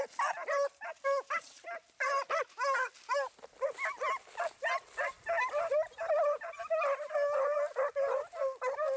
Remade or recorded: recorded